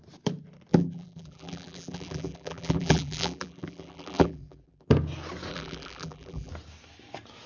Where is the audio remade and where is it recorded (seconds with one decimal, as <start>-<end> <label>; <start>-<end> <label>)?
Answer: 0.0-0.7 recorded; 0.7-4.9 remade; 4.9-5.5 recorded; 5.5-6.5 remade; 6.5-7.5 recorded